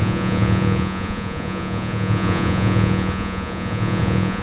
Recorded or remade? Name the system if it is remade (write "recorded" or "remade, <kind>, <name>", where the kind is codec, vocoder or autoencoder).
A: remade, vocoder, Vocos